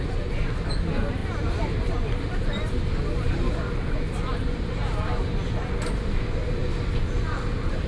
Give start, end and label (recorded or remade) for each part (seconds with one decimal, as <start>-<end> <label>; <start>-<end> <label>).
0.0-7.9 recorded

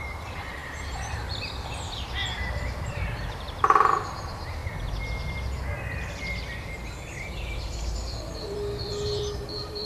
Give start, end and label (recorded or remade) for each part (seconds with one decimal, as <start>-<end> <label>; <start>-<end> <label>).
0.0-4.6 remade; 4.6-7.3 recorded; 7.3-9.8 remade